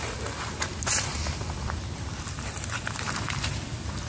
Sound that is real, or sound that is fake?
fake